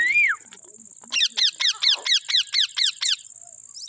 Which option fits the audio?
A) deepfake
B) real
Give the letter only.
B